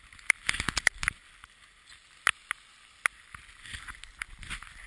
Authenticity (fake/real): real